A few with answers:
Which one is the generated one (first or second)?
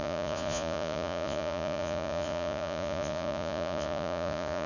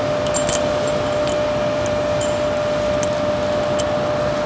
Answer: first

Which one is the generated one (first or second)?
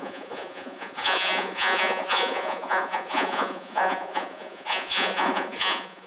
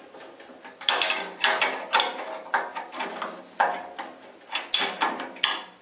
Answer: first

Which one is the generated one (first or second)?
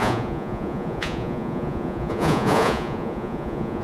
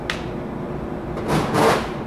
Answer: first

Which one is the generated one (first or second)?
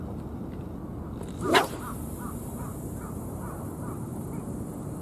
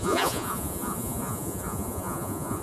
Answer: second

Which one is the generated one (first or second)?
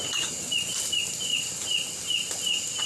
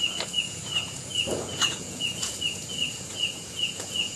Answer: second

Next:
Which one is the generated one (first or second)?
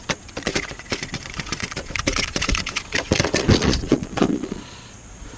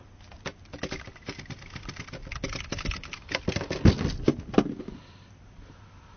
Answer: first